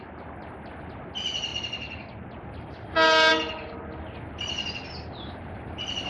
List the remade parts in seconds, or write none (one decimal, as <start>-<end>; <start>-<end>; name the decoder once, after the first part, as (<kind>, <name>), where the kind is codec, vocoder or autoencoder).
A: none